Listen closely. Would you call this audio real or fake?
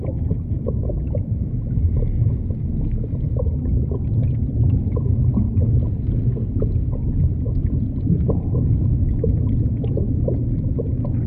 real